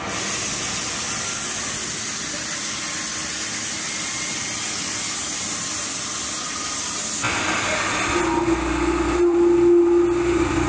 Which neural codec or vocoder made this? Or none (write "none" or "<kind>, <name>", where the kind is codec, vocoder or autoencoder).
none